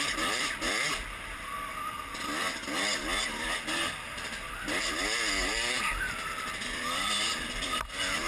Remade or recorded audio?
remade